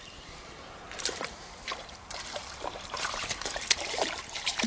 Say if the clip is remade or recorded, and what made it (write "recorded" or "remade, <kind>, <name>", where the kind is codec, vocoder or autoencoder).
remade, vocoder, BigVGAN v2